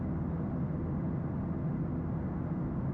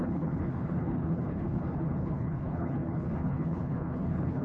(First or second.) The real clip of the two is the first